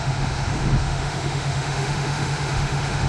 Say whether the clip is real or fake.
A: fake